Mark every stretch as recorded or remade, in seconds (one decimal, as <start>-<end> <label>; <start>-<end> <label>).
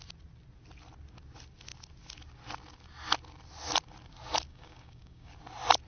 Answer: 0.0-4.5 recorded; 4.5-5.3 remade; 5.3-5.9 recorded